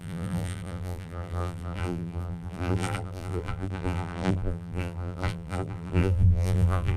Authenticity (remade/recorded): remade